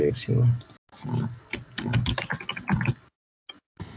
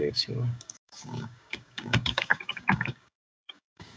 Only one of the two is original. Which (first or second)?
first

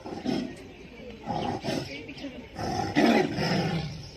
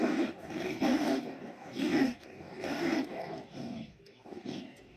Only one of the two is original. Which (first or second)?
first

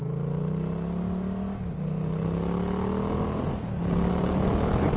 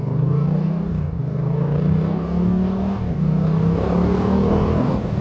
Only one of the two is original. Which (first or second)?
first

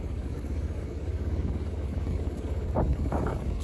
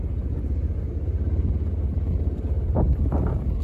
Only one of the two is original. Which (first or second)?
second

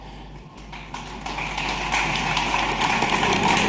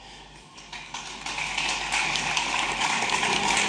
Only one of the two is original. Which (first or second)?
first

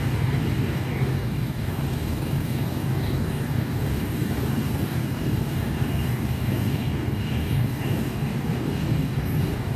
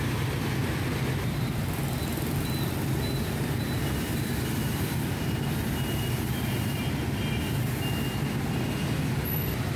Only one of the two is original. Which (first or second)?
second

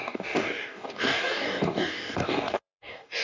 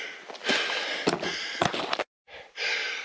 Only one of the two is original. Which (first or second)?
second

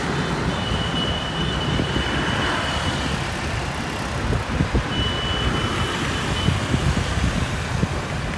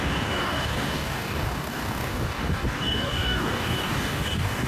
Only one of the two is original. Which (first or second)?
first